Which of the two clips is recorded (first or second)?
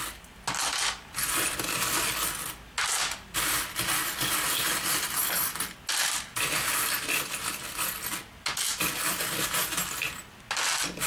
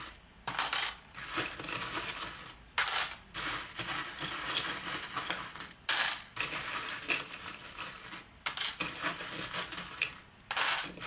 first